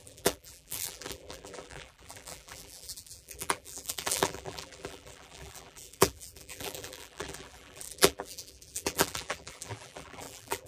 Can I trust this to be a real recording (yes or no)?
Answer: no